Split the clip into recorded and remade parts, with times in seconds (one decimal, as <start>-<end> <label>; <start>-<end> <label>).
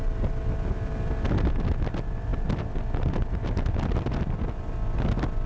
0.0-5.5 recorded